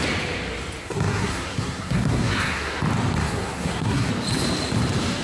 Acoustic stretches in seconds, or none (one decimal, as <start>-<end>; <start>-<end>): 0.0-0.8; 2.8-3.2; 4.1-5.2